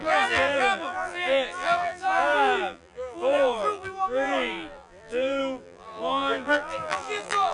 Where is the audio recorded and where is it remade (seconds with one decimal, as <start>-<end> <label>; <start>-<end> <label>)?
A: 0.0-7.5 remade